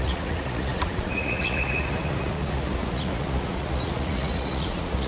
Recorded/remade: remade